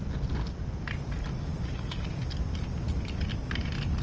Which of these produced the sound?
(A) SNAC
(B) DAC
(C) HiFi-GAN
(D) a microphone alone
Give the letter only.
D